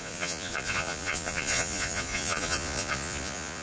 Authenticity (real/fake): fake